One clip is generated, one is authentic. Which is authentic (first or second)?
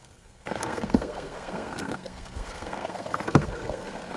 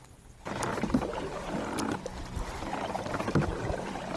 second